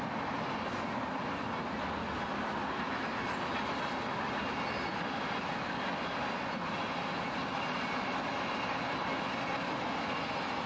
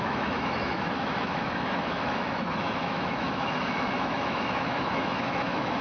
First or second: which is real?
first